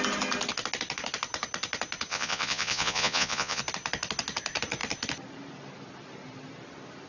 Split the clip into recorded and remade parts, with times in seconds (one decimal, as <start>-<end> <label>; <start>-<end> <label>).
0.0-2.1 recorded; 2.1-3.6 remade; 3.6-7.1 recorded